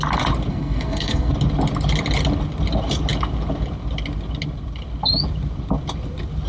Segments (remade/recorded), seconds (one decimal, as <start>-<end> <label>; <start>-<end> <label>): 0.0-0.5 recorded; 0.5-1.3 remade; 1.3-6.5 recorded